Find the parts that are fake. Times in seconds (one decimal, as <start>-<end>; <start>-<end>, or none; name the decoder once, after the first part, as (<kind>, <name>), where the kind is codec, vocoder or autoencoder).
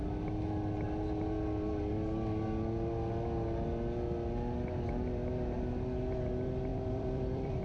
6.7-7.6 (vocoder, BigVGAN v2)